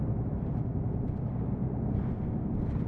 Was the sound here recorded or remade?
recorded